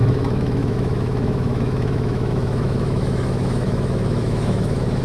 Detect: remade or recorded remade